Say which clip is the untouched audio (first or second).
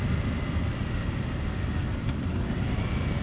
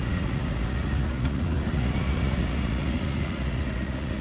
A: first